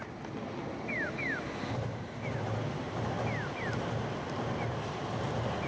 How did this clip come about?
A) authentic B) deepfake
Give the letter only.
A